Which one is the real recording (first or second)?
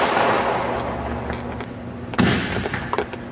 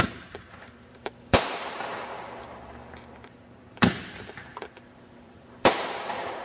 first